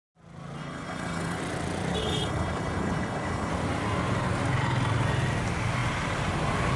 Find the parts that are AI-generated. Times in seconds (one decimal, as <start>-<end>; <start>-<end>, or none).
0.6-1.4; 2.0-3.5